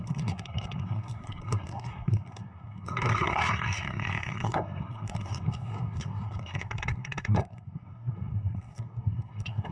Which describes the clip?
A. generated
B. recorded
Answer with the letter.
A